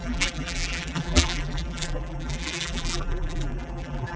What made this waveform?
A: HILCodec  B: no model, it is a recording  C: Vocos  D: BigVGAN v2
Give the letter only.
D